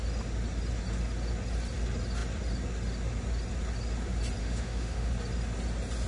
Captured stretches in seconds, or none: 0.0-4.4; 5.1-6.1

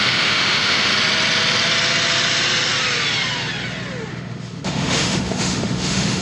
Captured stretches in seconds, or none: 0.9-4.1